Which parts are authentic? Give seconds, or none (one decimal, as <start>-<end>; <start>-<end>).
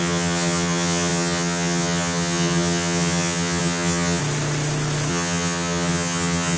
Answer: 4.2-5.1